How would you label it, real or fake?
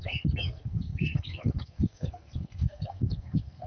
fake